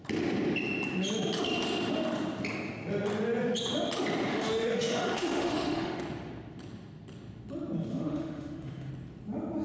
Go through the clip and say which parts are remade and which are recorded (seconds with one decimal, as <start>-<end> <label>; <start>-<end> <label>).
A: 0.0-4.3 recorded; 4.3-6.0 remade; 6.0-7.9 recorded; 7.9-8.9 remade; 8.9-9.6 recorded